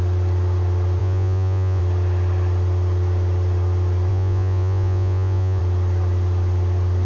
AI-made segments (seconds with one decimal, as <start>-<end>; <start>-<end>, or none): 1.0-1.8; 4.1-5.6